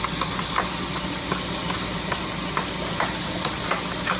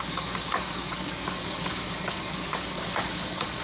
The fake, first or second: second